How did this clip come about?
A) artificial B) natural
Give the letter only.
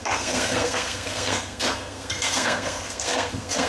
A